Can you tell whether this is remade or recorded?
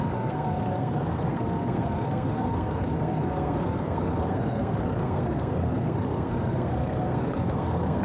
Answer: remade